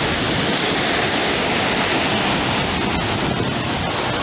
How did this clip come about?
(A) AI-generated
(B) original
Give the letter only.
B